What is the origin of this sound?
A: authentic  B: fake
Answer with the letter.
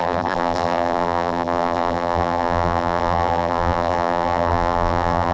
B